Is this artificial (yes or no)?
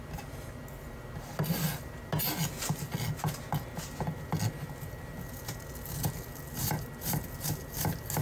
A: no